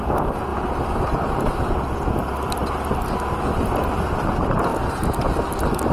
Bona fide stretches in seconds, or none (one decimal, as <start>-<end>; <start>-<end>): 0.5-2.1; 2.6-3.9; 4.7-5.9